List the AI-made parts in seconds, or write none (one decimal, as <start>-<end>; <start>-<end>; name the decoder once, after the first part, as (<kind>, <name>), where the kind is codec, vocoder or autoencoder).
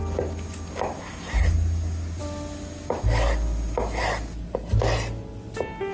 none